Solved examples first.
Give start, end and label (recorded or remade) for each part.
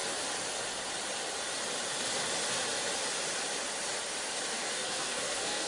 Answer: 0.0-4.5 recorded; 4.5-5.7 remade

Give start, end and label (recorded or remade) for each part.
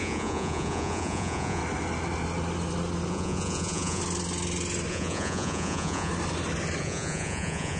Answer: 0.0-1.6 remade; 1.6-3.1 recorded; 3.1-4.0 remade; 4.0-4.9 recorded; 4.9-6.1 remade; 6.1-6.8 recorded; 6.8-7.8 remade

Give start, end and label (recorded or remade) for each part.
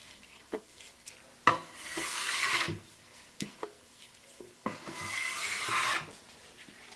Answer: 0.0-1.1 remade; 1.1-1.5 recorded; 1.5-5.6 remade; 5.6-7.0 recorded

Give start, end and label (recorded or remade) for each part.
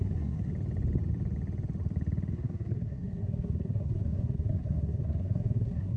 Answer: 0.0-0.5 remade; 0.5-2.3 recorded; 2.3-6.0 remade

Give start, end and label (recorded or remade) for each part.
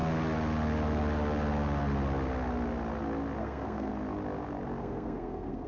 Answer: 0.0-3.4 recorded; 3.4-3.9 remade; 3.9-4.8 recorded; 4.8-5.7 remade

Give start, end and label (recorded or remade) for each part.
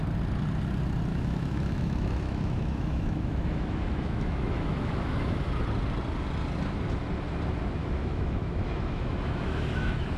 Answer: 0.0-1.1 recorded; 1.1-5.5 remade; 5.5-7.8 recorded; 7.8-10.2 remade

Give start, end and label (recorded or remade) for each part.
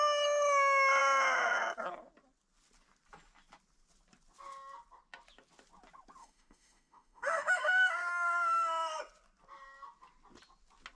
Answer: 0.0-6.2 recorded; 6.2-9.0 remade; 9.0-11.0 recorded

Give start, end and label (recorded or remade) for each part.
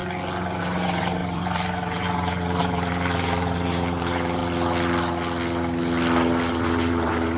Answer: 0.0-0.6 recorded; 0.6-4.4 remade; 4.4-6.5 recorded; 6.5-7.4 remade